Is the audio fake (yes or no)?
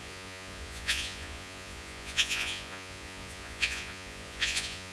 yes